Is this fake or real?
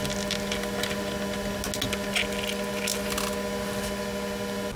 real